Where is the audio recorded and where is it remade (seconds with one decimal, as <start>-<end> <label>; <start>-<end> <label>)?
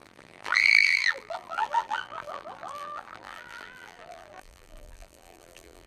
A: 0.0-5.9 remade